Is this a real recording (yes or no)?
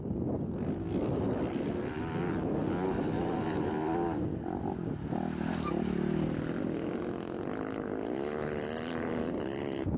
yes